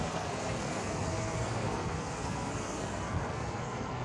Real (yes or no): no